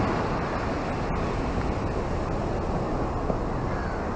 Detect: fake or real real